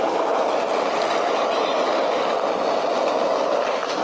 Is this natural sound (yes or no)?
yes